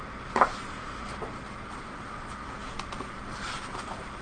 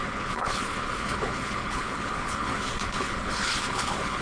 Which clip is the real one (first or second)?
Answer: first